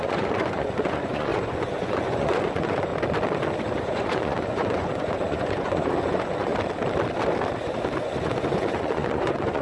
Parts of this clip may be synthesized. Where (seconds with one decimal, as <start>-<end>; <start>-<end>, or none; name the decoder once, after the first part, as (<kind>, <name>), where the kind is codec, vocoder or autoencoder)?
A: 0.0-2.9 (vocoder, Vocos); 3.8-6.5; 8.0-9.6